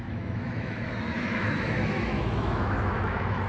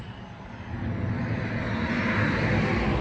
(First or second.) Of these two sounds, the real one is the second